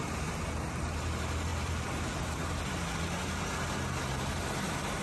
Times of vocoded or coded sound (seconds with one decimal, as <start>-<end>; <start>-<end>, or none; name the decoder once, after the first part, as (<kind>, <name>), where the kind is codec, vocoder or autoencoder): 1.5-2.0 (vocoder, BigVGAN v2)